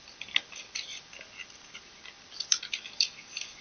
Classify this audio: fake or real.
real